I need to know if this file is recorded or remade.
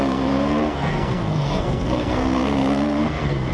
remade